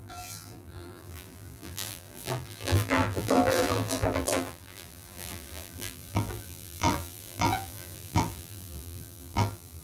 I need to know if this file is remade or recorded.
remade